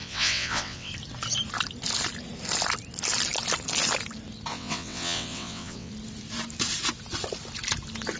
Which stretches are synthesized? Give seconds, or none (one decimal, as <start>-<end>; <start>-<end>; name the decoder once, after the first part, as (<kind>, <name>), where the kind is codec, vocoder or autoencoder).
0.0-0.9 (vocoder, WaveNeXt); 4.5-5.9